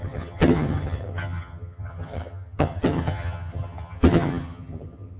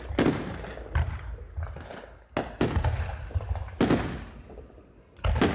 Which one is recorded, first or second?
second